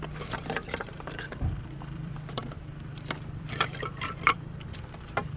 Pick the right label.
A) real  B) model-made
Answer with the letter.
B